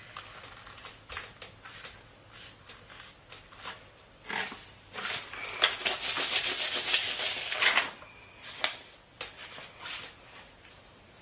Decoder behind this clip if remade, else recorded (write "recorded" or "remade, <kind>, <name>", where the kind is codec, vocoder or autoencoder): recorded